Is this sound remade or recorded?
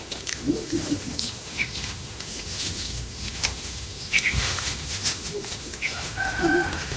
remade